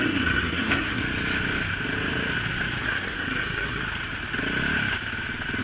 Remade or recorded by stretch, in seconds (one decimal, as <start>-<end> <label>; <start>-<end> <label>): 0.0-1.0 remade; 1.0-2.8 recorded; 2.8-3.8 remade; 3.8-5.6 recorded